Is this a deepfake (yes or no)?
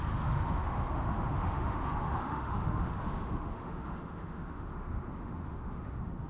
yes